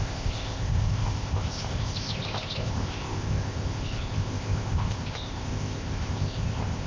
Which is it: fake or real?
fake